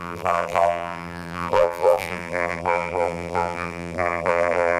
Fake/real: fake